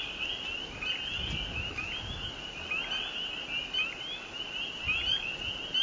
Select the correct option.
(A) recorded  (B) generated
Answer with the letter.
A